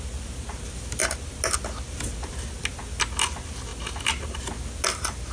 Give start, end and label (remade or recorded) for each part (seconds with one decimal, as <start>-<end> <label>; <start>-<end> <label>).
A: 0.0-5.3 recorded